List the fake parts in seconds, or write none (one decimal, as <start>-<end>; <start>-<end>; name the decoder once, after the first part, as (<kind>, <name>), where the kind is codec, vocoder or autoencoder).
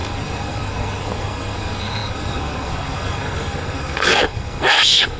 0.0-5.2 (codec, SNAC)